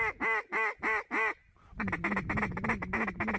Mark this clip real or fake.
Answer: real